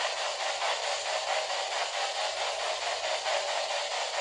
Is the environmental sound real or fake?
real